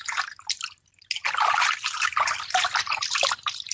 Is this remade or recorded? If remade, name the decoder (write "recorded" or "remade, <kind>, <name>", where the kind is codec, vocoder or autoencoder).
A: recorded